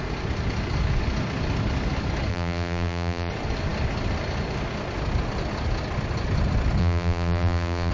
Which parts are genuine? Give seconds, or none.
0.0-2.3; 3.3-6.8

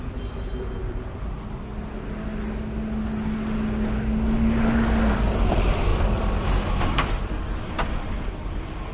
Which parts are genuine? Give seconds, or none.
0.0-0.8; 1.6-5.9; 7.7-8.9

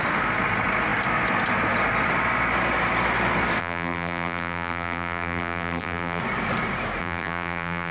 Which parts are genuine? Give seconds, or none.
0.0-3.6; 6.2-7.0

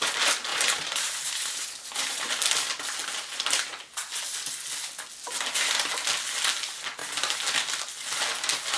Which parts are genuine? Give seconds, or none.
0.0-0.5; 2.3-8.8

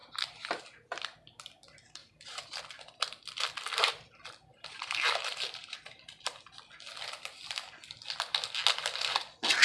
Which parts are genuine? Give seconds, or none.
0.0-2.0; 2.6-4.5; 6.5-9.6

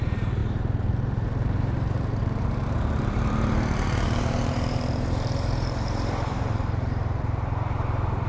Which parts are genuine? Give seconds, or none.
none

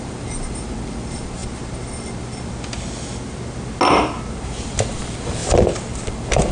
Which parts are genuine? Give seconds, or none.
1.4-4.3; 5.4-6.1